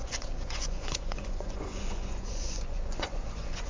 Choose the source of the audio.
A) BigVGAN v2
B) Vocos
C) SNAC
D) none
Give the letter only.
B